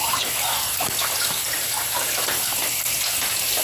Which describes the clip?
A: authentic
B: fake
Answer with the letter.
A